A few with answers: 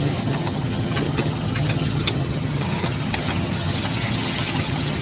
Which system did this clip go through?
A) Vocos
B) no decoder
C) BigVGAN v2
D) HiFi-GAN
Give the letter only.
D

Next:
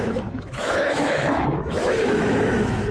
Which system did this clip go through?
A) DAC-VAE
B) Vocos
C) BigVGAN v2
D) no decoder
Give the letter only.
A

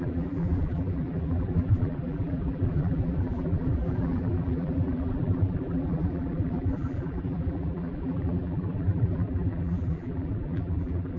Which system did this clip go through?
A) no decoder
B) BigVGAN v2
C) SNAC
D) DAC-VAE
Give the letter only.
B